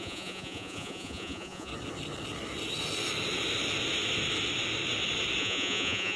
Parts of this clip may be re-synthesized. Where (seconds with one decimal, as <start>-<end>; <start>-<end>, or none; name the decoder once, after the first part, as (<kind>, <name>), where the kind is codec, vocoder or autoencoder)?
0.0-1.7 (vocoder, Vocos); 5.4-6.2